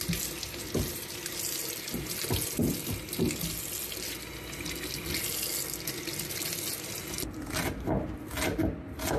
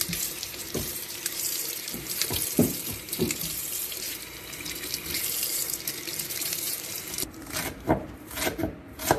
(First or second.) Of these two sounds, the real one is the first